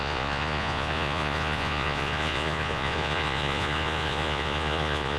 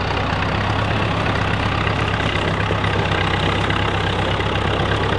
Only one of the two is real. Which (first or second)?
second